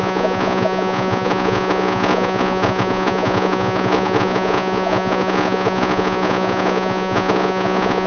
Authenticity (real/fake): fake